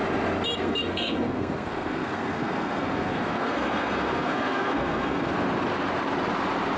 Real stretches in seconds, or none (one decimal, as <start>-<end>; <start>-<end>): 0.0-0.6; 5.3-6.8